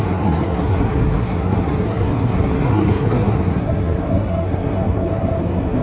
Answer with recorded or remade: remade